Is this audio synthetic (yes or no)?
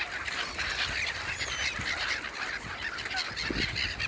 no